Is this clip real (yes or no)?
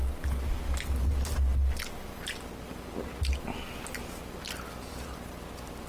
yes